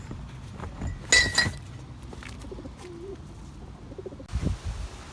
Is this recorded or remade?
recorded